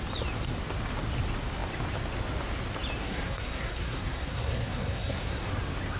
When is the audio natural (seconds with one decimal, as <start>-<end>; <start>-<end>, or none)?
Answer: 0.0-3.0; 5.5-6.0